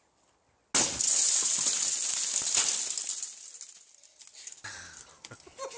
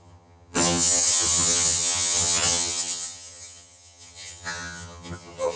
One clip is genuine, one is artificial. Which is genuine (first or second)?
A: first